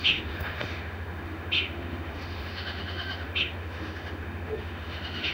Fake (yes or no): yes